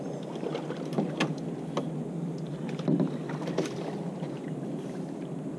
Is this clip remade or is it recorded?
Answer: recorded